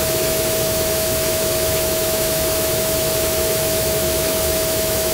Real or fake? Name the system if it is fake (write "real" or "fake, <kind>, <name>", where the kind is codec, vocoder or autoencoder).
fake, autoencoder, DAC-VAE